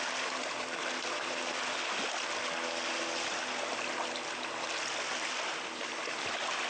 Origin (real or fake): real